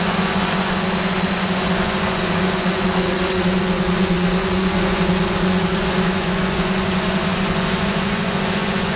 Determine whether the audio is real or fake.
fake